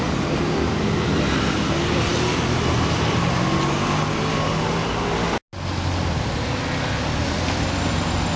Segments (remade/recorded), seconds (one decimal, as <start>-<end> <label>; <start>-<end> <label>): 0.0-8.4 recorded